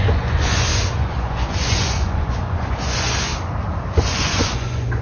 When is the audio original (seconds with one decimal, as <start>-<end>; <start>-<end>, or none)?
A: 3.3-4.0